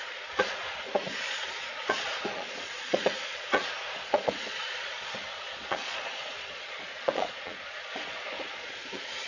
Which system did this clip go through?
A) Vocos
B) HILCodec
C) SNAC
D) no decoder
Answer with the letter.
A